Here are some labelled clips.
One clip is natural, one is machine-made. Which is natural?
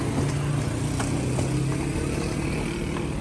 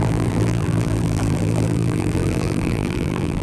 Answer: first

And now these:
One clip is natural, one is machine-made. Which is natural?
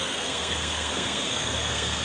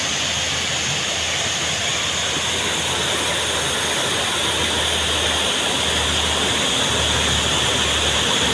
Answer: second